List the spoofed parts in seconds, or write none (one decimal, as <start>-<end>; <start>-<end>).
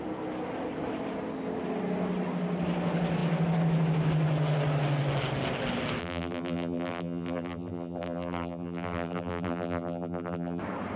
6.0-10.6